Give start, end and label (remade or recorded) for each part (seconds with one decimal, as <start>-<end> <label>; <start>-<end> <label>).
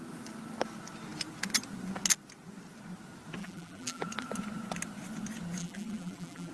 0.0-3.4 recorded; 3.4-4.0 remade; 4.0-5.6 recorded; 5.6-6.5 remade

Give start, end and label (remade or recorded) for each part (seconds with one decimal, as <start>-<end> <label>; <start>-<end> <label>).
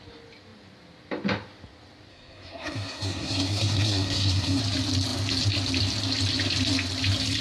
0.0-2.1 recorded; 2.1-4.6 remade; 4.6-7.4 recorded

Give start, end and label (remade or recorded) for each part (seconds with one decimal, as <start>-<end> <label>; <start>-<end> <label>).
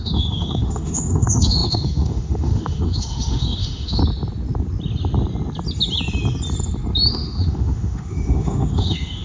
0.0-4.0 remade; 4.0-7.1 recorded; 7.1-9.2 remade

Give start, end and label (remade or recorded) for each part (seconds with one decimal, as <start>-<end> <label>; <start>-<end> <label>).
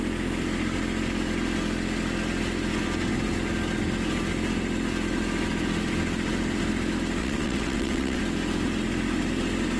0.0-7.2 recorded; 7.2-8.2 remade; 8.2-9.8 recorded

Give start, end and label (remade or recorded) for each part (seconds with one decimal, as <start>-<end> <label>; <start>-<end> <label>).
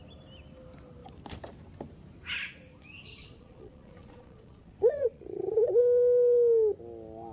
0.0-3.1 recorded; 3.1-5.8 remade; 5.8-7.3 recorded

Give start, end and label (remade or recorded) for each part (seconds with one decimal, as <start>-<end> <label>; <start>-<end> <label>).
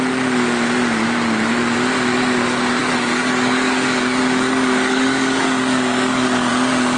0.0-2.8 recorded; 2.8-6.5 remade; 6.5-7.0 recorded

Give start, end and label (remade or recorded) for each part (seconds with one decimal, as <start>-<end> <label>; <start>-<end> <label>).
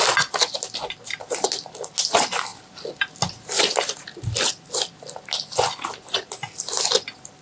0.0-7.4 recorded